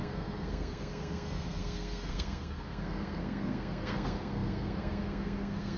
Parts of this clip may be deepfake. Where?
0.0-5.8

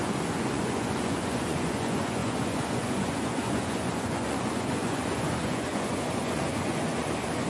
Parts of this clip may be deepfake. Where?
0.0-7.5

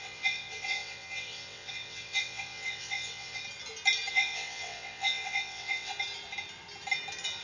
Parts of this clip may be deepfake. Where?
0.0-3.4; 4.1-5.9